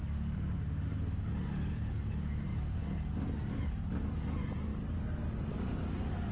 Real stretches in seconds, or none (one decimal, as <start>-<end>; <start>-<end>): 0.0-6.3